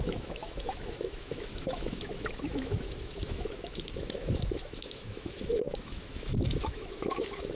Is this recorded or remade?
remade